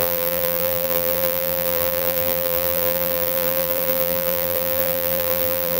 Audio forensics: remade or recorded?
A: remade